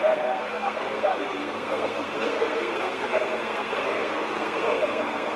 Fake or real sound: fake